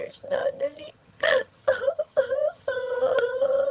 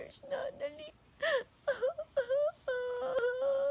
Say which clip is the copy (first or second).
first